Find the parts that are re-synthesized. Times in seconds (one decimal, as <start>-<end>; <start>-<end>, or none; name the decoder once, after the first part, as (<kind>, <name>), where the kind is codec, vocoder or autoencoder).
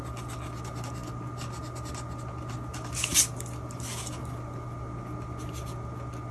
none